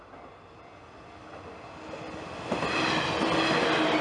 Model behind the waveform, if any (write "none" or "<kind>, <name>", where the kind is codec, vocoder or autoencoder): none